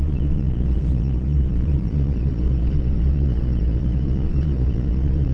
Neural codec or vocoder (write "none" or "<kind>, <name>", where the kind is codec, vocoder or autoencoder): vocoder, Vocos